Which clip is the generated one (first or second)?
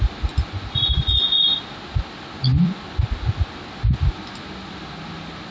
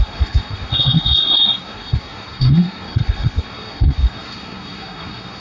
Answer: second